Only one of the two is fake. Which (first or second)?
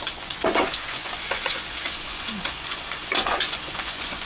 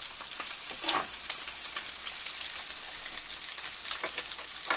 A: first